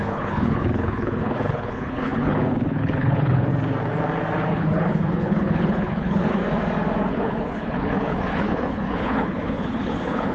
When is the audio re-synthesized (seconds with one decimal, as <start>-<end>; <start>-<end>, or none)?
0.0-3.5; 4.5-6.4; 7.1-10.3